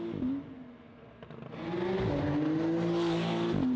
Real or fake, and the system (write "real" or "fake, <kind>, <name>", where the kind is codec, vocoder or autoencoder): real